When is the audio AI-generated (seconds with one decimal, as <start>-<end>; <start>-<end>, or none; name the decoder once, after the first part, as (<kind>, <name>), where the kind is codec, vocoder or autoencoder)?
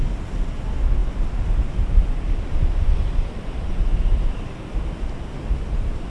none